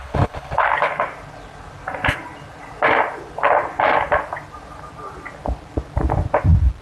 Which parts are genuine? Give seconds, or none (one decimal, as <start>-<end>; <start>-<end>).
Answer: 0.7-6.8